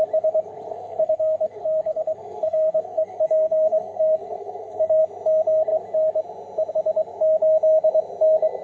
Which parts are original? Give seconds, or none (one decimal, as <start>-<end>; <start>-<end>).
0.0-0.7; 5.0-8.6